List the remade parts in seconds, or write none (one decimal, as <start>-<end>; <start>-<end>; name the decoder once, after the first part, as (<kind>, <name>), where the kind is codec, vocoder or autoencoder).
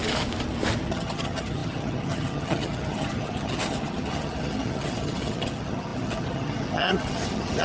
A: 0.9-7.6 (vocoder, HiFi-GAN)